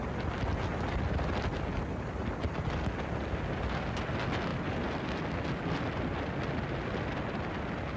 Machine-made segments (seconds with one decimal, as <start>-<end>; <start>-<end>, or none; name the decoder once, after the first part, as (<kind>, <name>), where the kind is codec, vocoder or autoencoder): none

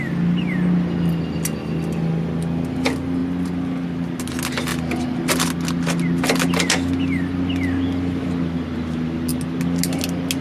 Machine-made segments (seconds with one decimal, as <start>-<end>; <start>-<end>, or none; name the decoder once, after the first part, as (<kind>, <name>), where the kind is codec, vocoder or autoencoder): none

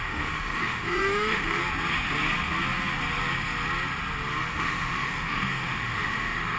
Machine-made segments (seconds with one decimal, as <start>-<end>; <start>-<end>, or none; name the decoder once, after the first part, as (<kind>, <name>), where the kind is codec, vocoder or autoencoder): 0.0-1.6 (autoencoder, DAC-VAE); 4.5-6.6

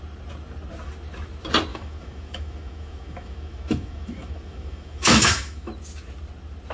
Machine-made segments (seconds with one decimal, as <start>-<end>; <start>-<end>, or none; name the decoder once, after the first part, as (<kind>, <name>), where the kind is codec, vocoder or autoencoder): 1.7-5.7 (autoencoder, DAC-VAE)

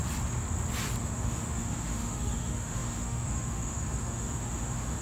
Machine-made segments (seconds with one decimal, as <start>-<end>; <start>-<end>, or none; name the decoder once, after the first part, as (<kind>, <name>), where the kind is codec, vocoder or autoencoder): 1.0-5.0 (autoencoder, DAC-VAE)

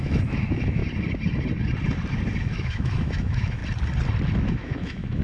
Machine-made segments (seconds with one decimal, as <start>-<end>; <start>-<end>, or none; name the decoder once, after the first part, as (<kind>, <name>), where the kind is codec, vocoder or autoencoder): 0.0-0.8 (autoencoder, DAC-VAE); 2.4-3.6; 4.5-5.2

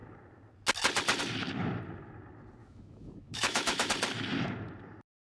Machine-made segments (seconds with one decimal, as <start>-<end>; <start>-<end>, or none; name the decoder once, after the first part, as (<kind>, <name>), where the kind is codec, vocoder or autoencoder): 2.6-3.9 (autoencoder, DAC-VAE)

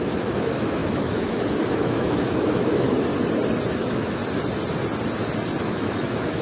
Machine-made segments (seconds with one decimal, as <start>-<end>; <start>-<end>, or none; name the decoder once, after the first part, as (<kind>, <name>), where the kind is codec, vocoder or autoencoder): 0.0-3.1 (autoencoder, DAC-VAE); 3.8-4.2; 5.6-6.4